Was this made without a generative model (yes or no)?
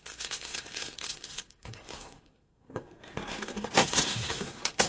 no